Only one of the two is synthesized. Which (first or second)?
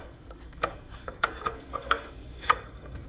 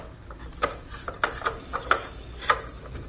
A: first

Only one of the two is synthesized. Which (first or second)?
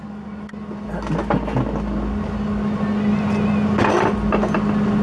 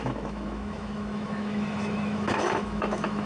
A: second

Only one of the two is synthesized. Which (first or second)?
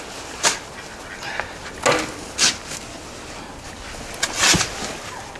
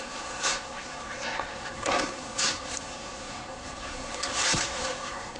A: second